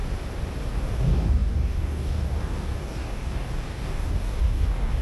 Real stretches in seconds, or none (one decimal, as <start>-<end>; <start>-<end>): 0.0-0.7